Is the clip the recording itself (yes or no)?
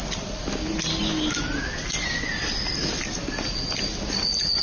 yes